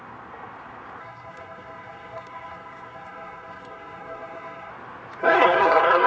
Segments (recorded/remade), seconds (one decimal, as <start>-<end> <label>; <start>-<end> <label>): 0.0-1.0 recorded; 1.0-4.7 remade; 4.7-5.2 recorded; 5.2-6.1 remade

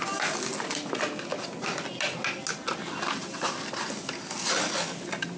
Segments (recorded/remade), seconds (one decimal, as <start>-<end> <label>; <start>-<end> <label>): 0.0-5.4 recorded

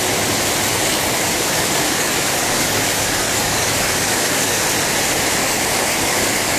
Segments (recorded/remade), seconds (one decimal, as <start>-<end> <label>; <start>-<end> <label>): 0.0-0.7 recorded; 0.7-4.6 remade; 4.6-5.4 recorded; 5.4-6.6 remade

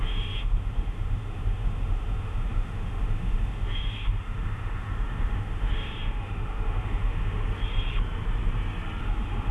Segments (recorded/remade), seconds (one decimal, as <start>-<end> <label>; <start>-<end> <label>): 0.0-7.4 remade; 7.4-9.0 recorded; 9.0-9.5 remade